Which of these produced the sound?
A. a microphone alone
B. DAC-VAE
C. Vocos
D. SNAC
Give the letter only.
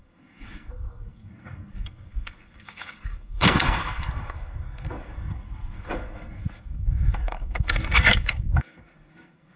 D